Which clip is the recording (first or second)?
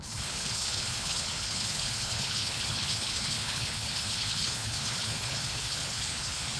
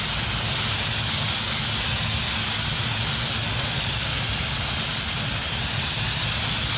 second